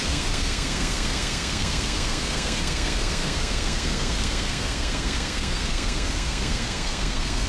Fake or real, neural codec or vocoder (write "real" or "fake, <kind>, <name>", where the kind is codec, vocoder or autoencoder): fake, codec, SNAC